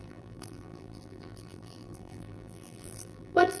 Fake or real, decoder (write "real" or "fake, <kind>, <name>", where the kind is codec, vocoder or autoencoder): fake, vocoder, BigVGAN v2